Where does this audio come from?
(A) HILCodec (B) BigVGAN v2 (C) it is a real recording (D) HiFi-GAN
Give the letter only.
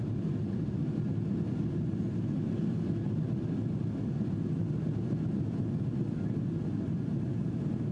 C